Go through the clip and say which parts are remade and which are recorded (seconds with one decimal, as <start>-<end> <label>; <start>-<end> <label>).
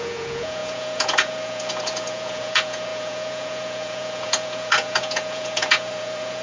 0.0-6.4 remade